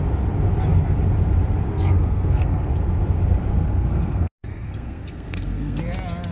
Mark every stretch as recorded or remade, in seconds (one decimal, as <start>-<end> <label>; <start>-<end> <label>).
0.0-1.7 recorded; 1.7-2.7 remade; 2.7-3.5 recorded; 3.5-5.8 remade; 5.8-6.3 recorded